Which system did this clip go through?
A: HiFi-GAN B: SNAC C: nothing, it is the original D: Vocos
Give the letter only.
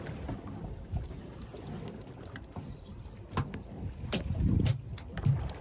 C